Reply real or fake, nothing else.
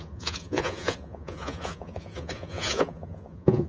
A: fake